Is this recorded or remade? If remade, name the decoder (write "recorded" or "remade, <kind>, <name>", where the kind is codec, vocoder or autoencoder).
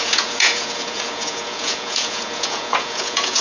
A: remade, vocoder, Vocos